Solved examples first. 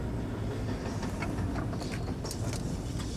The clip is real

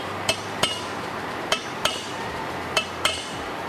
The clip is fake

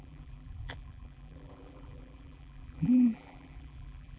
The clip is fake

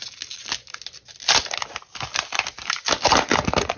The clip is real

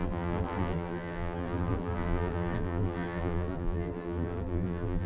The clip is fake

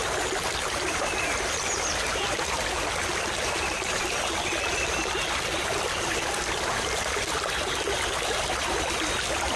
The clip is real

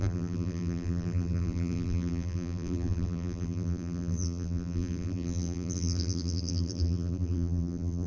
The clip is fake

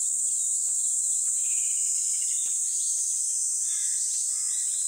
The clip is real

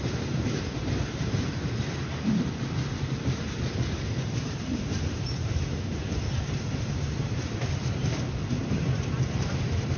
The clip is fake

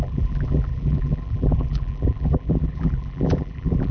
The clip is fake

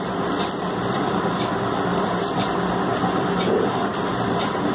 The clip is fake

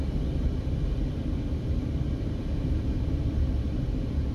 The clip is real